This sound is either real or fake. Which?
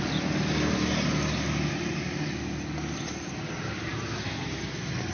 real